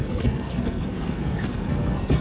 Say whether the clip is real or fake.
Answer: fake